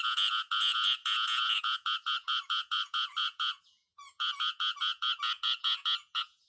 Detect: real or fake fake